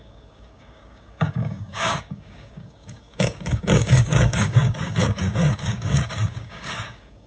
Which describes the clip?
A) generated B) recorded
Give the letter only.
A